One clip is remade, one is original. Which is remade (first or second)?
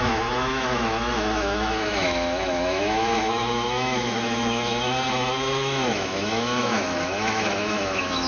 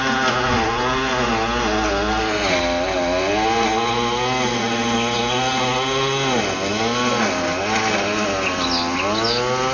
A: first